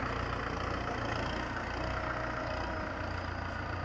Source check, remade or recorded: recorded